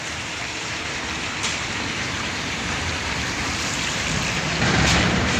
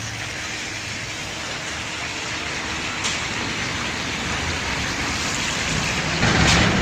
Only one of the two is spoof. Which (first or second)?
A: first